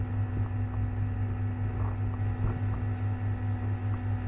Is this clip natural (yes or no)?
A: yes